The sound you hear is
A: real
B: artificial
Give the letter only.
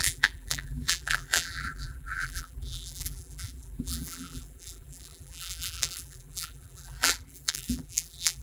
B